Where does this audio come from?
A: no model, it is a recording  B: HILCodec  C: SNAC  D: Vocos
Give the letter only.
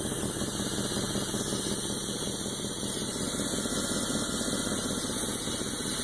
A